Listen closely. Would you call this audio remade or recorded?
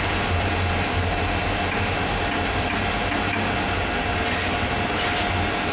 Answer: recorded